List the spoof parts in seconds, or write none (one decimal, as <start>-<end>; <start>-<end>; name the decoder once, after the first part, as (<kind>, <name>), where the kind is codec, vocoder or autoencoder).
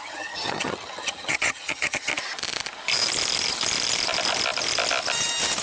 0.0-2.1 (vocoder, HiFi-GAN)